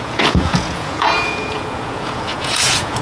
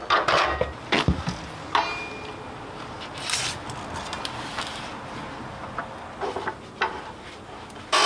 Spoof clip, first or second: first